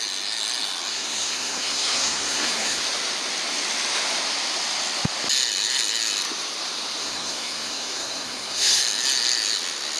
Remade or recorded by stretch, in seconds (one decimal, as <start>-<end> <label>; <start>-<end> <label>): 0.0-0.9 recorded; 0.9-2.8 remade; 2.8-7.0 recorded; 7.0-8.8 remade; 8.8-10.0 recorded